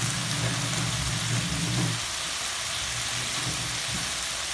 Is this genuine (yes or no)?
yes